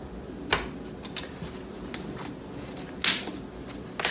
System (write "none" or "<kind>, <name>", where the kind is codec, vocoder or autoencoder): none